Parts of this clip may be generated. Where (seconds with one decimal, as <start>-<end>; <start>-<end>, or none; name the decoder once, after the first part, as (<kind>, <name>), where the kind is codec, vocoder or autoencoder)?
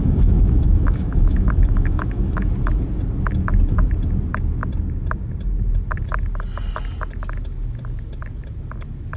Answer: 0.0-2.5 (autoencoder, DAC-VAE)